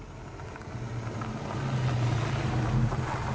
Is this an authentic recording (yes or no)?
yes